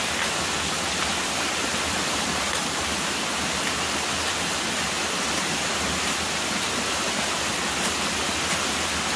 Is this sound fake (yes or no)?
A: no